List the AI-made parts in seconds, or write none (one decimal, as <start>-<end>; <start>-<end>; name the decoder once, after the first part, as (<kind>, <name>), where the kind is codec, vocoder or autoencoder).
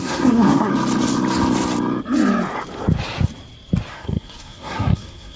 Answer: 0.0-0.7 (codec, SNAC); 3.9-5.4